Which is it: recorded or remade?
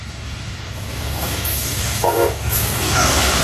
remade